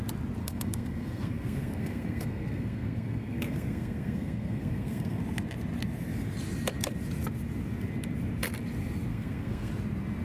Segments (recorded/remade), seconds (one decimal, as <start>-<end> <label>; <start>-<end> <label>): 0.0-0.4 recorded; 0.4-5.2 remade; 5.2-9.1 recorded; 9.1-9.7 remade; 9.7-10.2 recorded